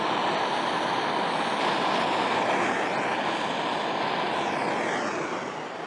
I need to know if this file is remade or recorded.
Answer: recorded